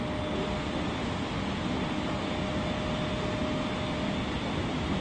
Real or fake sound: real